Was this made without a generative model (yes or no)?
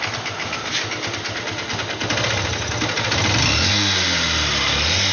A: yes